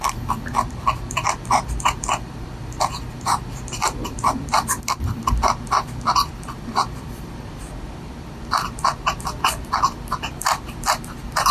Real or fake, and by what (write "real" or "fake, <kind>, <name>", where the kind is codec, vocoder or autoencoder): fake, vocoder, BigVGAN v2